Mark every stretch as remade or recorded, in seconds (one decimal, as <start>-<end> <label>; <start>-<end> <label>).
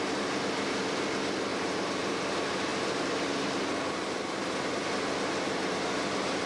0.0-1.5 recorded; 1.5-2.2 remade; 2.2-2.7 recorded; 2.7-3.4 remade; 3.4-6.5 recorded